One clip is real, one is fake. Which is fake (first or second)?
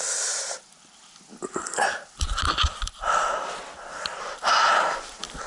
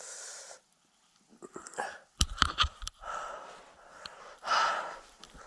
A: second